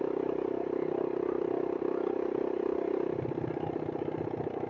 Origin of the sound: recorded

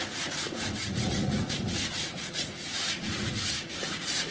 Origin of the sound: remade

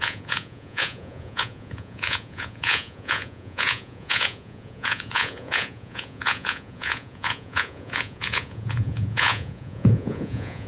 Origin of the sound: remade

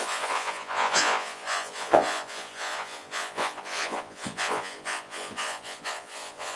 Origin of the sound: remade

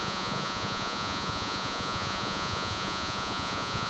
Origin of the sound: remade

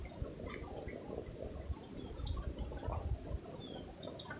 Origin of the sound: recorded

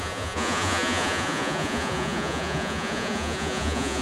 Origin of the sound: remade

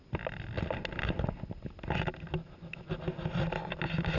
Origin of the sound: recorded